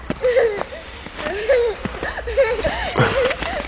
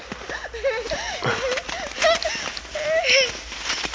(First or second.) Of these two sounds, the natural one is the second